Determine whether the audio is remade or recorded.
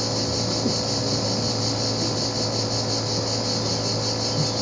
recorded